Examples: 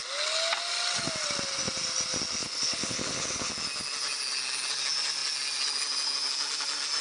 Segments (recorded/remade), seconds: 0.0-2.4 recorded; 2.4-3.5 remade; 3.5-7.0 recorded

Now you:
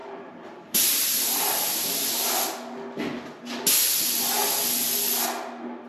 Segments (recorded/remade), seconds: 0.0-1.4 remade; 1.4-5.9 recorded

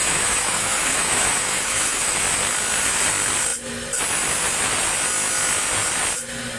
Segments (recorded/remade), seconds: 0.0-2.2 remade; 2.2-6.6 recorded

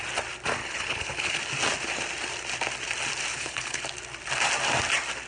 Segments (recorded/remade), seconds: 0.0-0.6 recorded; 0.6-1.4 remade; 1.4-3.3 recorded; 3.3-3.8 remade; 3.8-5.3 recorded

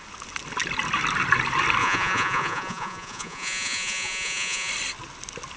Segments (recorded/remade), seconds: 0.0-1.8 recorded; 1.8-4.7 remade; 4.7-5.6 recorded